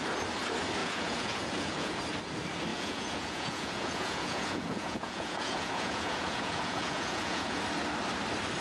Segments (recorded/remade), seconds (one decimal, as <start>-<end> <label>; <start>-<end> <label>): 0.0-0.8 recorded; 0.8-2.0 remade; 2.0-2.7 recorded; 2.7-7.6 remade; 7.6-8.6 recorded